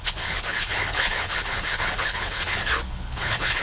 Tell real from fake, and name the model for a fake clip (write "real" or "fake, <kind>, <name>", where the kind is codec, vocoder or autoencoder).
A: fake, codec, HILCodec